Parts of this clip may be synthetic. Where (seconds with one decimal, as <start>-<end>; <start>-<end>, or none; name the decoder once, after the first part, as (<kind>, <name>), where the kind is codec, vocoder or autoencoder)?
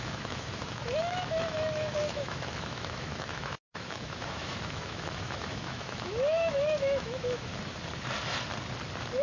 0.0-7.5 (autoencoder, DAC-VAE)